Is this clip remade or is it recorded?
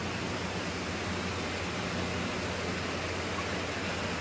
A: recorded